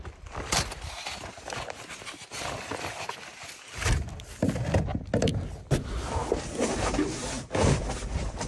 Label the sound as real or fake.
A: real